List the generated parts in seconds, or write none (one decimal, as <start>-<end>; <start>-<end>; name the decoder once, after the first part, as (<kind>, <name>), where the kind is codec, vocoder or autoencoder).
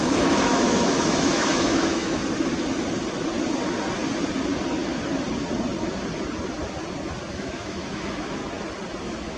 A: 0.0-2.2 (autoencoder, DAC-VAE); 7.3-8.4; 9.0-9.4